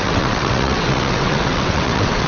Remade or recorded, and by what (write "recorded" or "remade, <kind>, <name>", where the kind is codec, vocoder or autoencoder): remade, vocoder, WaveNeXt